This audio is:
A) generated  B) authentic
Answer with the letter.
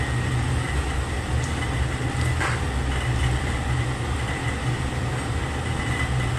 B